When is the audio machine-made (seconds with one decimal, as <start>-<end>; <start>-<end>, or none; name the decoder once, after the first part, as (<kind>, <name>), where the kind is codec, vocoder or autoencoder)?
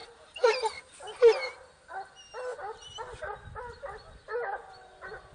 0.0-0.6 (vocoder, BigVGAN v2)